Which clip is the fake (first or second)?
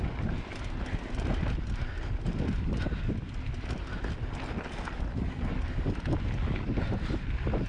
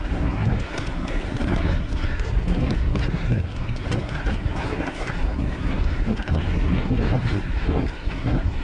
second